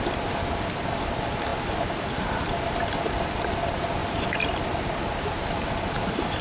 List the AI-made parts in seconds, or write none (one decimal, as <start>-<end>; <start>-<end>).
4.0-6.4